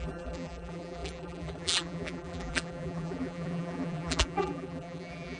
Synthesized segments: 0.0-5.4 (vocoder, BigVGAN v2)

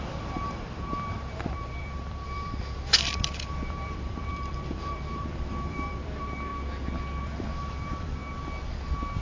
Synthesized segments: 0.0-6.5 (vocoder, BigVGAN v2); 7.2-8.2

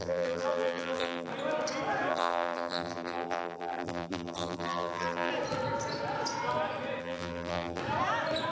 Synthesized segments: 0.0-1.3 (vocoder, BigVGAN v2); 2.1-5.3; 7.0-7.8

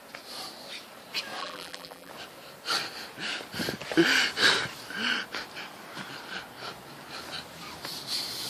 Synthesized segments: 1.4-2.1 (vocoder, BigVGAN v2)

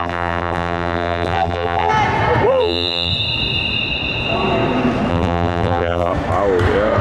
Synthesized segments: 0.0-1.9 (vocoder, BigVGAN v2); 2.5-3.1; 5.1-6.1

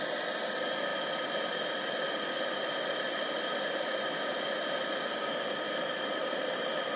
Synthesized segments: 6.2-7.0 (vocoder, BigVGAN v2)